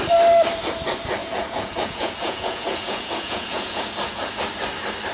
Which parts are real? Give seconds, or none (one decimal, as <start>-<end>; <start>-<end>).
0.0-1.2; 4.3-5.1